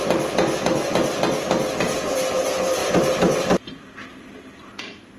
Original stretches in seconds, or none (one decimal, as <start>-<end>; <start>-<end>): 0.0-5.2